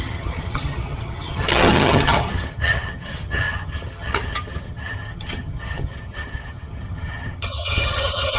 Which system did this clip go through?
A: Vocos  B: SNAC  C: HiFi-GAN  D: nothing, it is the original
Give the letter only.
C